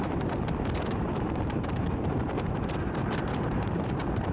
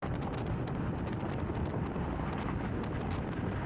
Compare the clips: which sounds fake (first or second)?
first